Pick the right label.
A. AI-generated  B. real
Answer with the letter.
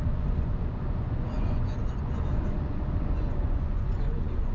A